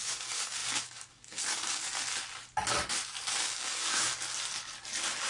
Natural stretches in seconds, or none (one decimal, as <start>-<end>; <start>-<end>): 1.9-3.3; 4.1-5.3